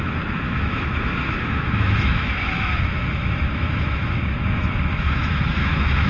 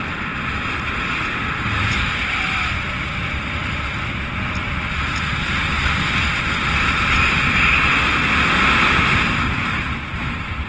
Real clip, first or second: second